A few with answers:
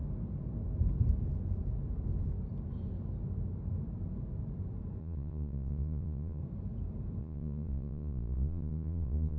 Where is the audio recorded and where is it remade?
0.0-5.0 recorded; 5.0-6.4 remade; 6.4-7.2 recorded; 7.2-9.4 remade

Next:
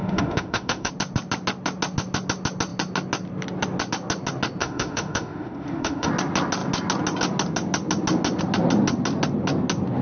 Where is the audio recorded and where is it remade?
0.0-0.9 remade; 0.9-4.6 recorded; 4.6-6.1 remade; 6.1-10.0 recorded

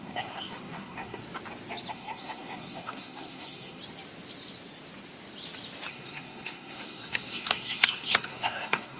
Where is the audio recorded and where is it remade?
0.0-1.2 remade; 1.2-1.9 recorded; 1.9-3.8 remade; 3.8-5.9 recorded; 5.9-9.0 remade